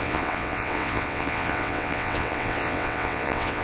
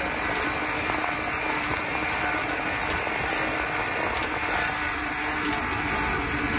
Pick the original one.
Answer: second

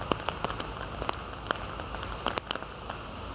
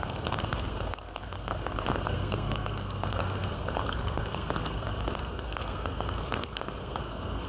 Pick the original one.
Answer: first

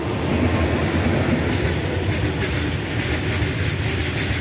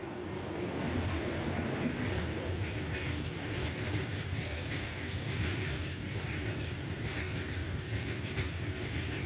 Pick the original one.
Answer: first